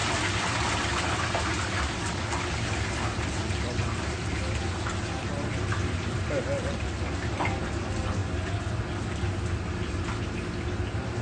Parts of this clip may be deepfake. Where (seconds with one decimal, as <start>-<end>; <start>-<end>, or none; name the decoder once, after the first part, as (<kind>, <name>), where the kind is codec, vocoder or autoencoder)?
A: none